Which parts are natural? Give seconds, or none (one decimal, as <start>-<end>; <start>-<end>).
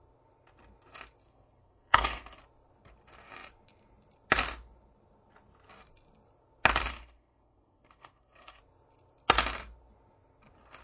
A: 0.0-1.2; 2.4-6.9; 8.6-10.8